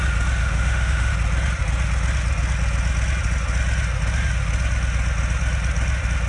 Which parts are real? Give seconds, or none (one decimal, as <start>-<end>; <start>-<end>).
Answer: 0.0-0.4; 1.1-6.3